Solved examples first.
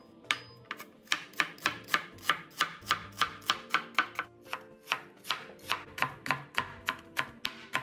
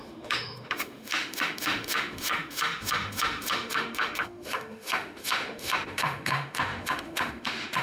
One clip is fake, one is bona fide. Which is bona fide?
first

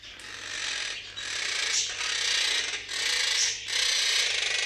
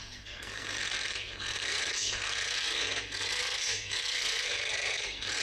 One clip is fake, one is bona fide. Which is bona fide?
first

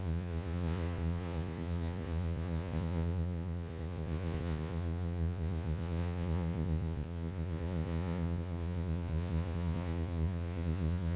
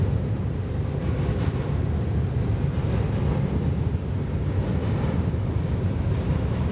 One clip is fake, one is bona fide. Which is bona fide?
second